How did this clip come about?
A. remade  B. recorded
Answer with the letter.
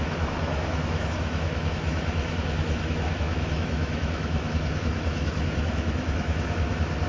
A